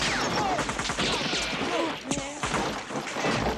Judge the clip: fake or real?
real